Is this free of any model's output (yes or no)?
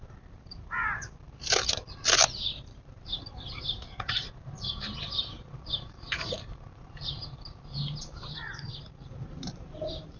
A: no